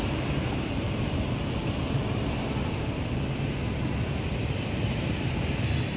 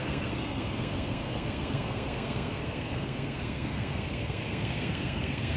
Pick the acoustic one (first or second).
first